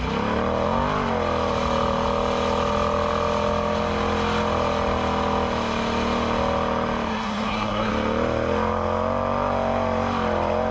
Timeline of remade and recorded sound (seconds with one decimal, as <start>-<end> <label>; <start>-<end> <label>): 0.0-7.1 recorded; 7.1-7.9 remade; 7.9-10.7 recorded